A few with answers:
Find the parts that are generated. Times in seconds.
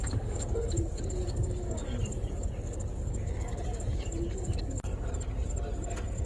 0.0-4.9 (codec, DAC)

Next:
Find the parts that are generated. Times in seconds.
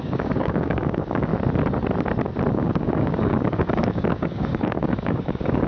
0.0-1.3 (codec, DAC); 2.5-5.7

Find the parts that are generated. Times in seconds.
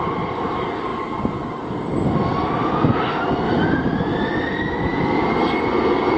none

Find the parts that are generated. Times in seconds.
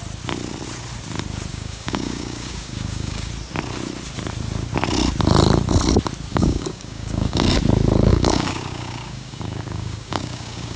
1.5-3.3 (codec, DAC); 6.3-7.6; 8.1-10.8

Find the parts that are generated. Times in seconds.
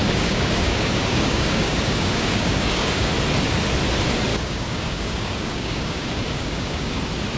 0.0-3.1 (codec, DAC); 4.3-7.0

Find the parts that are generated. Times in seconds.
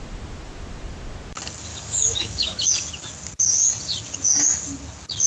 1.7-2.6 (codec, DAC)